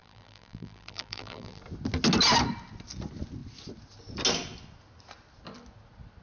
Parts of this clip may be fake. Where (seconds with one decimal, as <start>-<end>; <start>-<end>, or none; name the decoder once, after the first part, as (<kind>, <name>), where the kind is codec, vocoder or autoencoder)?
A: 0.0-1.6 (vocoder, BigVGAN v2)